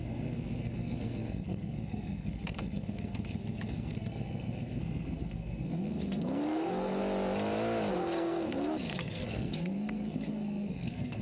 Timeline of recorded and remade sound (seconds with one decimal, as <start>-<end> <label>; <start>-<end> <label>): 0.0-7.0 remade; 7.0-7.9 recorded; 7.9-11.2 remade